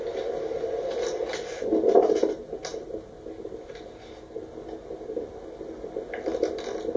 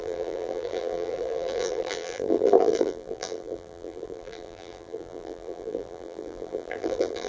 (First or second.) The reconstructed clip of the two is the second